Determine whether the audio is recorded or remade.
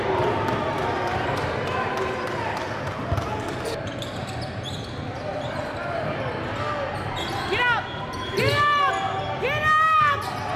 recorded